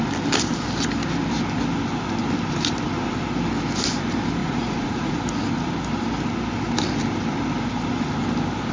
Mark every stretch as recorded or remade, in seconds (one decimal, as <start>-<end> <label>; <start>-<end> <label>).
0.0-4.4 recorded; 4.4-5.2 remade; 5.2-8.7 recorded